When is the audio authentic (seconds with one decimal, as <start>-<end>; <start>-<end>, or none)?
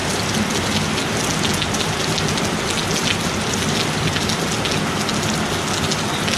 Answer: 0.0-6.4